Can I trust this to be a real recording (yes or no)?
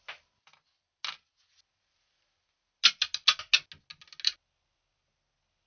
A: yes